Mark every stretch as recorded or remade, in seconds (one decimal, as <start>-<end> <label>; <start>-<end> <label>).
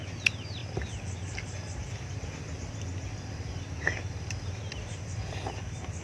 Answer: 0.0-6.0 recorded